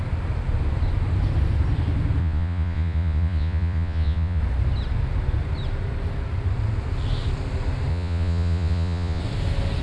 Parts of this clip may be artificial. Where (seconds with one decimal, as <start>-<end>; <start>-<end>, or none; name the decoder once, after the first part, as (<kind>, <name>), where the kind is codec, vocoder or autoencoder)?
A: 2.2-4.4 (vocoder, Vocos); 7.9-9.2